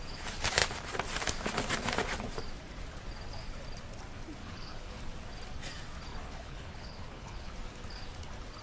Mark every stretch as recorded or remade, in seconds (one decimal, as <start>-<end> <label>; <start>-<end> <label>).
0.0-4.4 recorded; 4.4-5.0 remade; 5.0-6.1 recorded; 6.1-7.5 remade; 7.5-8.6 recorded